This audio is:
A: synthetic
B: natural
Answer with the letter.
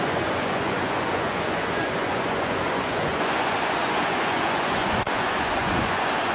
A